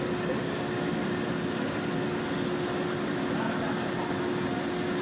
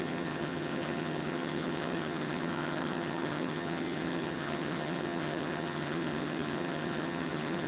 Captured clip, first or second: first